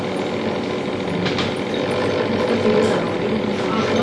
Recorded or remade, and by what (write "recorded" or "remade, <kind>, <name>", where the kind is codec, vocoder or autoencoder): recorded